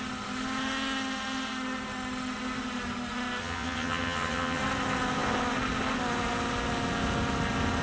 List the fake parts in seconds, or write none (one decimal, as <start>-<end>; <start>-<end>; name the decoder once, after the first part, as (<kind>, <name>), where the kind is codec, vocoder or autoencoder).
3.4-4.6 (vocoder, HiFi-GAN)